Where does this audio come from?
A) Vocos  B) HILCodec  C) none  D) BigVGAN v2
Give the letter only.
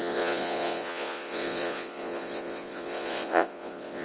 A